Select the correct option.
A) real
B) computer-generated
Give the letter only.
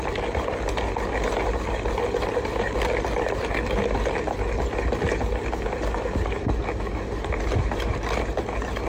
A